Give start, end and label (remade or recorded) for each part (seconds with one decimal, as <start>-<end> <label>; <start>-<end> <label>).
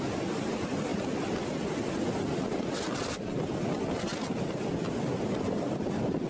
0.0-6.3 recorded